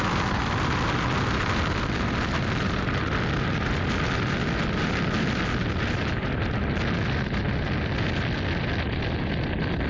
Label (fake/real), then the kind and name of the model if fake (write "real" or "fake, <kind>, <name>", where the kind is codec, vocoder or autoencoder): real